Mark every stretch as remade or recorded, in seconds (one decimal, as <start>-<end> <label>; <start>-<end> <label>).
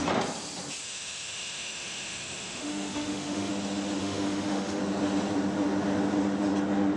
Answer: 0.0-0.8 recorded; 0.8-3.5 remade; 3.5-4.0 recorded; 4.0-4.8 remade; 4.8-7.0 recorded